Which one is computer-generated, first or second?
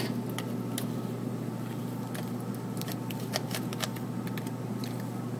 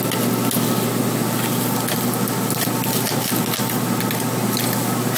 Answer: first